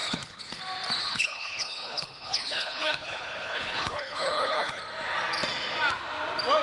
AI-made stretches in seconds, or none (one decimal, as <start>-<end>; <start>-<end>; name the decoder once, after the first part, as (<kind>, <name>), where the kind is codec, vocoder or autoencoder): 0.0-0.6 (codec, HILCodec); 1.0-4.8